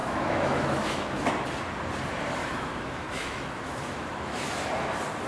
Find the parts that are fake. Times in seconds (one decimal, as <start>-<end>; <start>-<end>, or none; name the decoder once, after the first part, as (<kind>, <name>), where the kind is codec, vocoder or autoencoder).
0.0-1.3 (autoencoder, DAC-VAE); 2.4-4.7